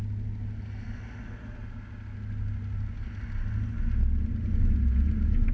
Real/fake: real